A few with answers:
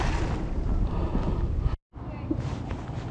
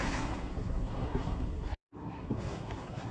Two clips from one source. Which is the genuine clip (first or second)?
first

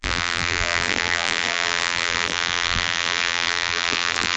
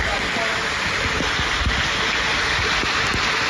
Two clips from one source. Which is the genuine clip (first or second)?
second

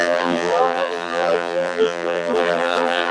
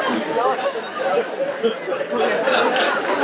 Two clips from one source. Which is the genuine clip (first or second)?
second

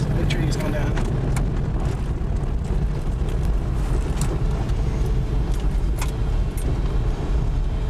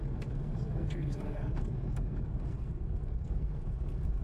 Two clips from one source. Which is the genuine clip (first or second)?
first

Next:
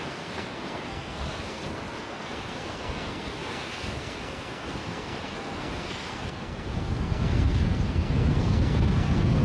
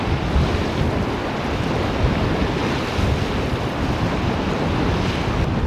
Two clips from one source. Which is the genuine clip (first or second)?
second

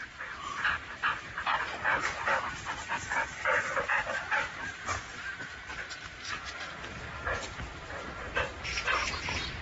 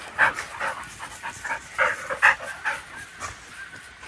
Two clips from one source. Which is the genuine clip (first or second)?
second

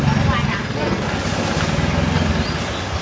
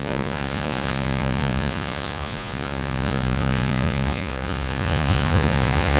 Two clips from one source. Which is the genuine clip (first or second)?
first